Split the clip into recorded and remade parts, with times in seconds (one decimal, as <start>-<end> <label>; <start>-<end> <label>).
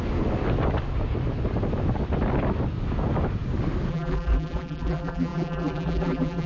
0.0-3.9 recorded; 3.9-6.5 remade